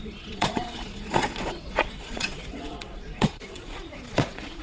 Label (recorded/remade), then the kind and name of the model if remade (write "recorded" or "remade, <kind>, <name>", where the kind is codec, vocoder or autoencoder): remade, vocoder, Vocos